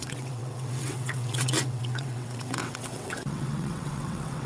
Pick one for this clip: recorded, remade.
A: remade